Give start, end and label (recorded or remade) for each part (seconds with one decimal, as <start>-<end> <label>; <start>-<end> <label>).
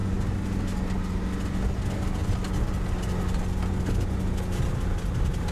0.0-0.6 remade; 0.6-5.5 recorded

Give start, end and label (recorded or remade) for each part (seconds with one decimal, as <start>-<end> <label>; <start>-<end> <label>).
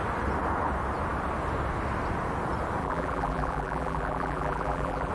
0.0-2.8 recorded; 2.8-5.1 remade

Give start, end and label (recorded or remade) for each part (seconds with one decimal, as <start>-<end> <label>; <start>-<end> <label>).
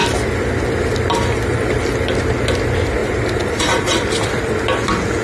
0.0-3.0 recorded; 3.0-4.6 remade; 4.6-5.2 recorded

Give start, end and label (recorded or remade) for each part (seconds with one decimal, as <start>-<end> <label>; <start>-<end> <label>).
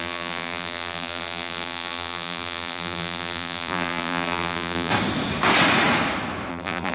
0.0-4.9 remade; 4.9-6.5 recorded; 6.5-6.9 remade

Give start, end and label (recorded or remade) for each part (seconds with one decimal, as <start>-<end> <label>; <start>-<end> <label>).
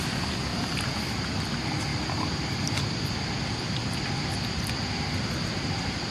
0.0-0.5 remade; 0.5-1.3 recorded; 1.3-6.1 remade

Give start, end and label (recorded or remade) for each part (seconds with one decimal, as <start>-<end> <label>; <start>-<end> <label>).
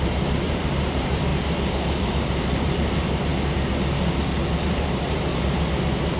0.0-1.3 remade; 1.3-2.0 recorded; 2.0-3.3 remade; 3.3-4.6 recorded; 4.6-6.2 remade